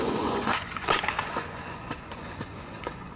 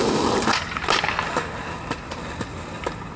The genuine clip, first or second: second